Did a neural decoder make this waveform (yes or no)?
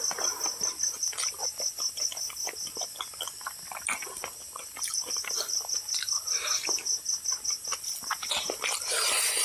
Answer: no